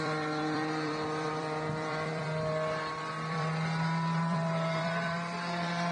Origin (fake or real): fake